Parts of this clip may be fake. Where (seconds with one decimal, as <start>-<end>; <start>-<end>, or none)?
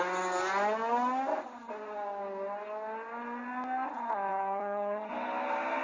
4.3-5.1